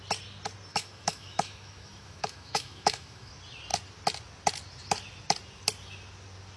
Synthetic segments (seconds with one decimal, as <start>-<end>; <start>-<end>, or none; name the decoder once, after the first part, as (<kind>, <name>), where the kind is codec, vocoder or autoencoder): 0.7-3.3 (autoencoder, DAC-VAE)